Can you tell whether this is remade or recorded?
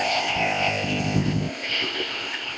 remade